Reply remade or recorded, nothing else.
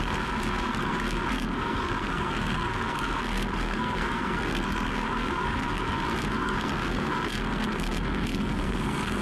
remade